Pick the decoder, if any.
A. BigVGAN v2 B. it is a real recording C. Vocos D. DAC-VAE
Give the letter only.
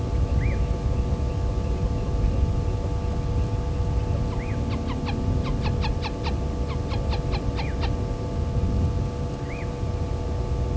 B